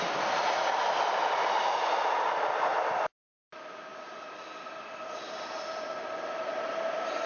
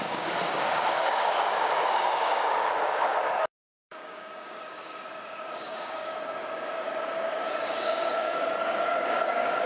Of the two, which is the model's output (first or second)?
second